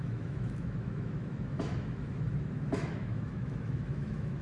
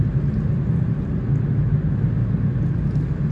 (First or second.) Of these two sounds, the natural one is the second